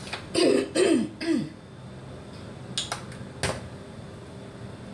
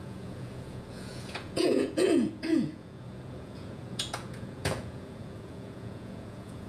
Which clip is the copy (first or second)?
second